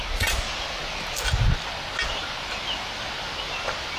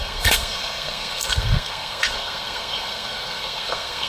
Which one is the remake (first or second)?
second